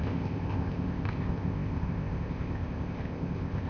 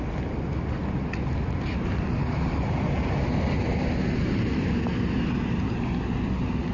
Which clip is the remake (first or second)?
first